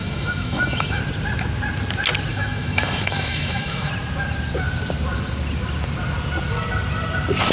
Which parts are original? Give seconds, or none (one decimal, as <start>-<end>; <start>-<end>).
1.0-2.3; 3.9-7.5